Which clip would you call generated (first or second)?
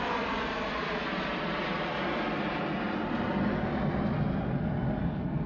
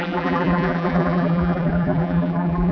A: second